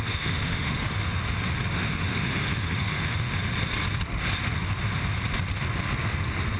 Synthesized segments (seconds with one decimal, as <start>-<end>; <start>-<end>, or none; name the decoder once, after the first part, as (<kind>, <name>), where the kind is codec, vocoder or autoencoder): 0.0-1.2 (autoencoder, DAC-VAE); 1.7-3.4